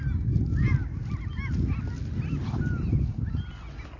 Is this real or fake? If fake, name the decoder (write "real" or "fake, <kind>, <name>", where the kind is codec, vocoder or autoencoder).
real